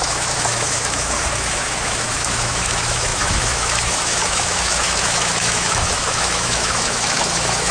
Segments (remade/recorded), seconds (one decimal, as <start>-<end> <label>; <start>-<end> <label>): 0.0-7.7 remade